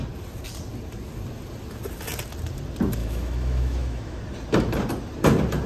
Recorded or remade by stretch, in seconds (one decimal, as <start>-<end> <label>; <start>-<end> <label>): 0.0-3.0 recorded; 3.0-4.2 remade; 4.2-5.7 recorded